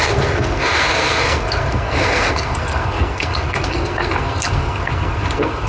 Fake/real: fake